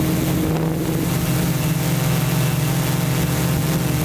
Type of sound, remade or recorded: recorded